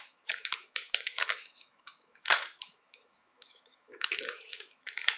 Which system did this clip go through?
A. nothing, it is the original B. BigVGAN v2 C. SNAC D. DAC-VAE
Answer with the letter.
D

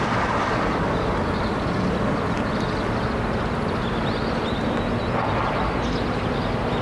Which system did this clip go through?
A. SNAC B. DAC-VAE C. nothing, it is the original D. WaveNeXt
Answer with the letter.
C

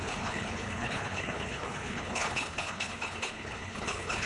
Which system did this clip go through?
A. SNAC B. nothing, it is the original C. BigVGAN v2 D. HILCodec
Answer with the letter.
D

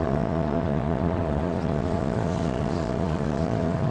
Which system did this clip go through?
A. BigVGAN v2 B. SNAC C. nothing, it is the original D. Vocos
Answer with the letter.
D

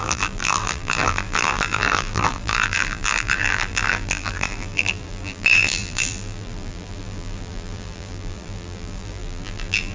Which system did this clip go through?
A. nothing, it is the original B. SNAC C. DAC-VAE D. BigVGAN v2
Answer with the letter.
D